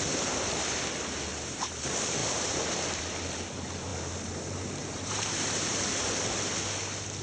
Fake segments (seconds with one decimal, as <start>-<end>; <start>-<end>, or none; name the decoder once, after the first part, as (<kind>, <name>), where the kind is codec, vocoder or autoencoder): 1.3-1.8 (vocoder, BigVGAN v2); 2.2-3.0; 3.9-6.1